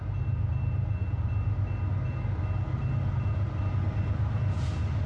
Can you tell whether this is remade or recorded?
recorded